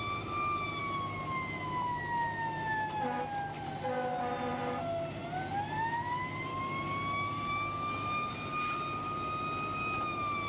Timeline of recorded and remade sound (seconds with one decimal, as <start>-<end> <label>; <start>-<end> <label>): 0.0-6.5 recorded; 6.5-8.3 remade; 8.3-10.5 recorded